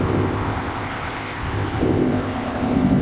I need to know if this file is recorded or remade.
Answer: remade